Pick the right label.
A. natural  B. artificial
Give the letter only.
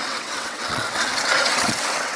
B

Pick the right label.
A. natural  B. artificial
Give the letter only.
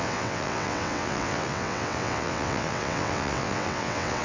B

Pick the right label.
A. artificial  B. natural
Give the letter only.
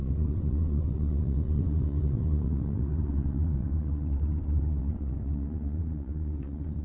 A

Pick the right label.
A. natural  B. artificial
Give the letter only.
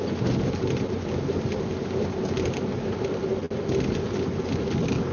A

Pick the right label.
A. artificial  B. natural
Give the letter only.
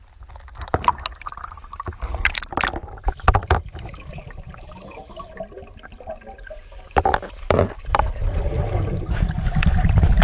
B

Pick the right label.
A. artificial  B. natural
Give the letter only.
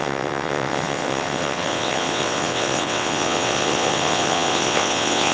A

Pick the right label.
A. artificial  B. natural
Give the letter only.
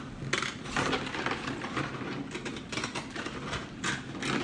B